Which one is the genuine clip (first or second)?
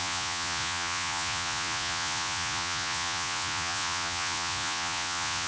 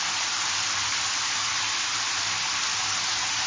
second